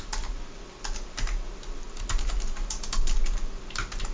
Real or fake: real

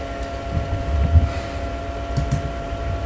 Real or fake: real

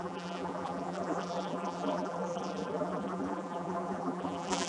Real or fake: fake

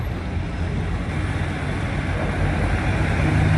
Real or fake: real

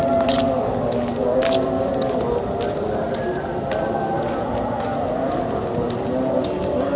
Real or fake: real